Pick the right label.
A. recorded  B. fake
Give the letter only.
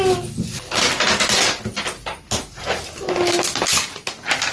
A